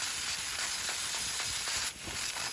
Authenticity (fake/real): real